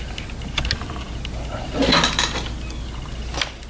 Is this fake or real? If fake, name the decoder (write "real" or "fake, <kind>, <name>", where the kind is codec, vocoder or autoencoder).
real